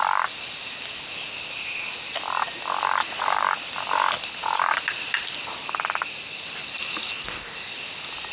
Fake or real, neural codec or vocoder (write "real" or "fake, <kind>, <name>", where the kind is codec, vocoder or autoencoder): real